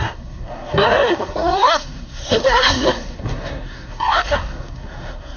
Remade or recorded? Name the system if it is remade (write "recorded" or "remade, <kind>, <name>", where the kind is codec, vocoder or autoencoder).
remade, codec, SNAC